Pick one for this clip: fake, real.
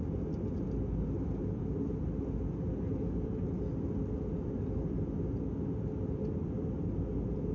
real